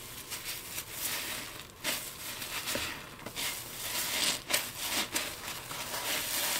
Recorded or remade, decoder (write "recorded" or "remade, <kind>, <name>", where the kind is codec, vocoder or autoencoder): recorded